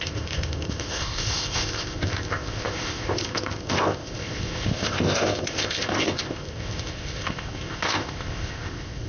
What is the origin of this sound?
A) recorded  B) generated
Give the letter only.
B